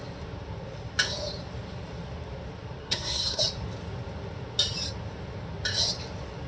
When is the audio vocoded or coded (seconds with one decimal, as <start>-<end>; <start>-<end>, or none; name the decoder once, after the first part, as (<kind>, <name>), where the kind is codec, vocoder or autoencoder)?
2.8-3.4 (codec, SNAC)